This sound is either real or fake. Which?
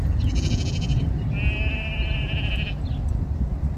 real